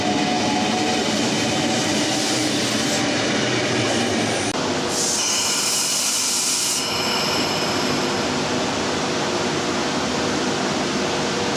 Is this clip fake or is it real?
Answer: real